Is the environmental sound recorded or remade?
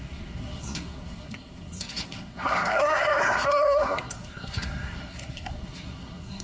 remade